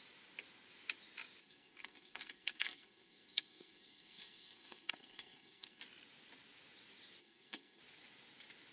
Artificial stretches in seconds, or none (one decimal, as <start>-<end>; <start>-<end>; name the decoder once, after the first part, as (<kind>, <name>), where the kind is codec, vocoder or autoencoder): 1.4-5.8 (codec, SNAC); 7.2-7.8